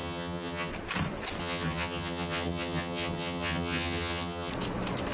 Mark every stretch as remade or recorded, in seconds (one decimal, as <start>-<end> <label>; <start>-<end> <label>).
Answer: 0.0-0.7 remade; 0.7-1.4 recorded; 1.4-4.5 remade; 4.5-5.1 recorded